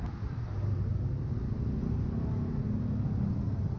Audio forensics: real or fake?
real